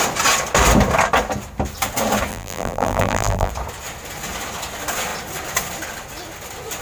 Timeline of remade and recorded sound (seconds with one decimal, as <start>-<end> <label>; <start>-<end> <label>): 0.0-2.3 recorded; 2.3-3.5 remade; 3.5-6.8 recorded